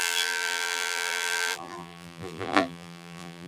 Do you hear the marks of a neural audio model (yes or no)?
yes